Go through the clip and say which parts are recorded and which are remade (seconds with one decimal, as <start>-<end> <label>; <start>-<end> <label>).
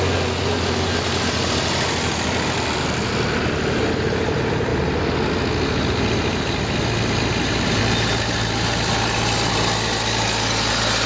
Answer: 0.0-11.1 recorded